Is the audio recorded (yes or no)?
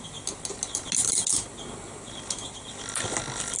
yes